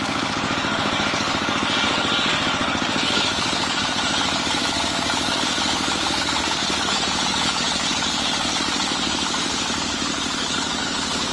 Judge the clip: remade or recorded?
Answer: remade